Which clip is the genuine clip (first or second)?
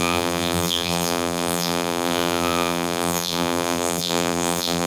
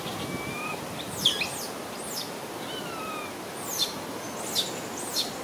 second